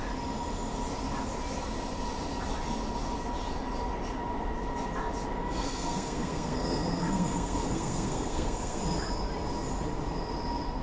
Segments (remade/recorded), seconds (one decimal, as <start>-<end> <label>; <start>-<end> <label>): 0.0-5.4 recorded; 5.4-8.8 remade; 8.8-10.8 recorded